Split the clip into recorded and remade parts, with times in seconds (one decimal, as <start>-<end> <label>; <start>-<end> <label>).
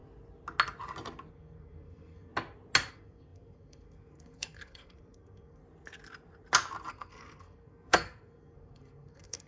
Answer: 0.0-1.3 recorded; 1.3-2.3 remade; 2.3-2.9 recorded; 2.9-5.6 remade; 5.6-6.9 recorded; 6.9-9.5 remade